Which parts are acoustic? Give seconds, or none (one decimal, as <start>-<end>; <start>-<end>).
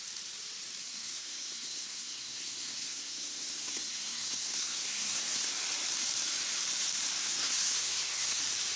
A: 0.0-0.8; 5.5-7.2; 8.4-8.8